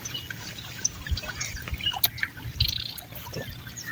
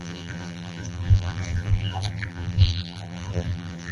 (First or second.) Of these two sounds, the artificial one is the second